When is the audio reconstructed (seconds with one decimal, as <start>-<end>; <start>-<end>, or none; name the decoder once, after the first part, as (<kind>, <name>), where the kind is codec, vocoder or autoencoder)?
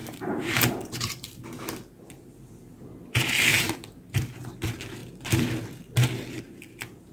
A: 0.0-1.6 (vocoder, BigVGAN v2); 3.5-4.4